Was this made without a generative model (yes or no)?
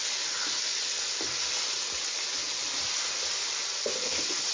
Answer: yes